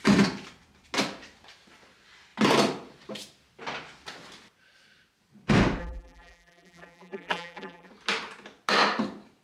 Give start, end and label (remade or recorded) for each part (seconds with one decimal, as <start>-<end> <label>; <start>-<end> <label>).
0.0-5.8 recorded; 5.8-7.9 remade; 7.9-9.4 recorded